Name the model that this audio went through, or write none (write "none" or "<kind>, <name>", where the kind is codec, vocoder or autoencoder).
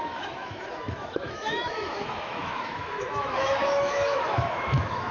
autoencoder, DAC-VAE